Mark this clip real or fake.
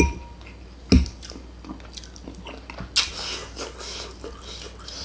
real